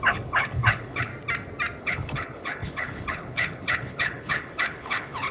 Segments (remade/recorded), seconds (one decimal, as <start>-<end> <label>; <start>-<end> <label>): 0.0-1.1 remade; 1.1-1.8 recorded; 1.8-5.3 remade